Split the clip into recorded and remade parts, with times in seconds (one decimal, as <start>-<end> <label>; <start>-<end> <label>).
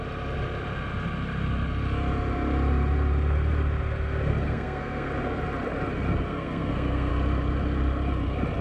0.0-4.3 recorded; 4.3-5.1 remade; 5.1-6.3 recorded; 6.3-7.1 remade; 7.1-8.6 recorded